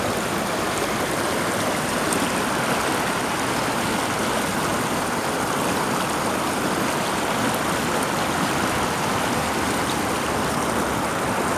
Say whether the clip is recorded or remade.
recorded